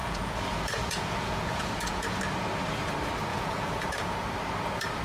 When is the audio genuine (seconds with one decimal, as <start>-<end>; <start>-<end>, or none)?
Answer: 2.2-3.3; 4.4-5.0